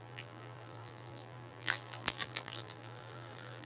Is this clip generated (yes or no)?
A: yes